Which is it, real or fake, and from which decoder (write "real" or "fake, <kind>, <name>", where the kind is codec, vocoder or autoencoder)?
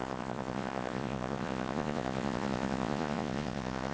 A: fake, vocoder, Vocos